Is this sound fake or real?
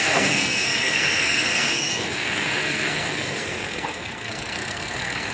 fake